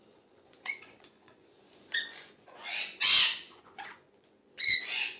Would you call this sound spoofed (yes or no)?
yes